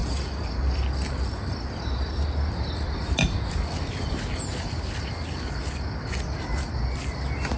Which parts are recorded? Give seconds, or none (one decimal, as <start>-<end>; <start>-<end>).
0.8-7.6